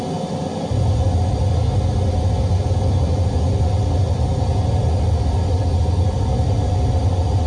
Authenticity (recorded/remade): recorded